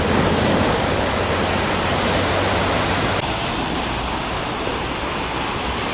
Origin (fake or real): real